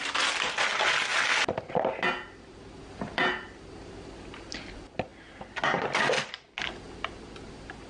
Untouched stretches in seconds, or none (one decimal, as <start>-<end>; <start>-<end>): 0.0-7.9